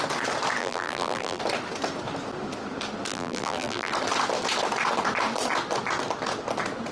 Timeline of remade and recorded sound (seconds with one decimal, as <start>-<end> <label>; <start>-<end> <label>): 0.0-0.6 recorded; 0.6-1.4 remade; 1.4-3.1 recorded; 3.1-3.9 remade; 3.9-6.9 recorded